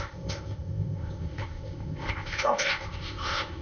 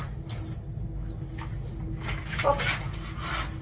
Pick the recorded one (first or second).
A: second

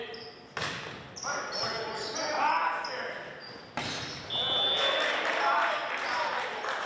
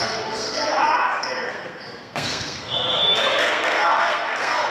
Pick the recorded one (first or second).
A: first